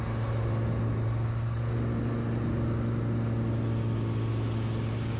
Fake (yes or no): no